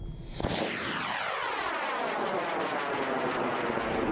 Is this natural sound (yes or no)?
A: yes